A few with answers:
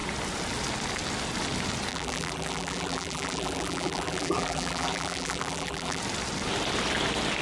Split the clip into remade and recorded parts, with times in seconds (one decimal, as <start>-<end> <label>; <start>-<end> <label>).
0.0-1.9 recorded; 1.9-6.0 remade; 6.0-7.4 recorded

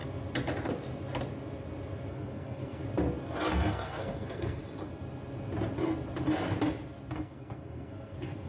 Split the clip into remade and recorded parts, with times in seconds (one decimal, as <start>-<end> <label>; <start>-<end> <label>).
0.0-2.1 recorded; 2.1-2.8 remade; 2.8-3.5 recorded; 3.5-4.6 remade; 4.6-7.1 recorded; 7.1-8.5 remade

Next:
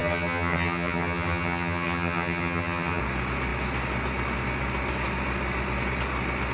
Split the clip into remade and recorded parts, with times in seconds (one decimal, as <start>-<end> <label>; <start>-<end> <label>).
0.0-3.0 remade; 3.0-6.5 recorded

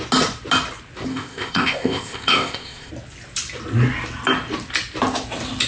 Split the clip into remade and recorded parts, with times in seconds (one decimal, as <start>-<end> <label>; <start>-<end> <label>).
0.0-1.1 recorded; 1.1-2.9 remade; 2.9-5.7 recorded